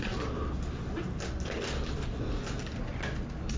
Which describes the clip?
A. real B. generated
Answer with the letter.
A